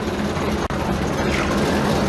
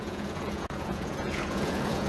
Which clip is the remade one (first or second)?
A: second